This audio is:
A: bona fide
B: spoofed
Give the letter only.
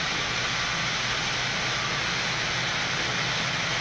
A